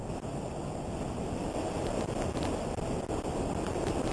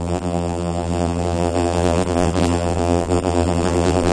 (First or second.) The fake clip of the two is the second